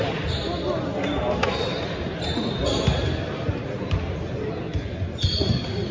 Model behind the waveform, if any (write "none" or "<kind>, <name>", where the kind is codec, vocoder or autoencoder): none